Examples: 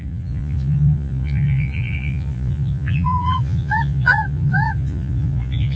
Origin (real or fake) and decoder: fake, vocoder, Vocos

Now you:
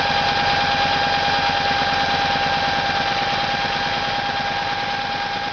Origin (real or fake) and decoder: real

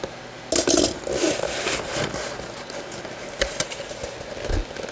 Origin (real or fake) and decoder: real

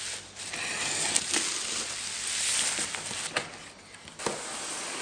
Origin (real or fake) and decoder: real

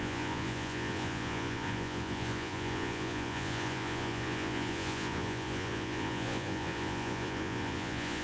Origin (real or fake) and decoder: fake, vocoder, Vocos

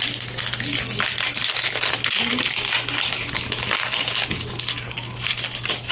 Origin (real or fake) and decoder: real